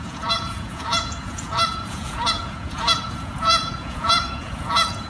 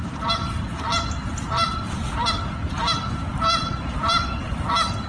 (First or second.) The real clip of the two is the second